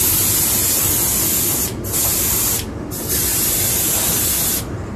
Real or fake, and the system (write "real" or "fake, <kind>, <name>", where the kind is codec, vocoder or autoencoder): real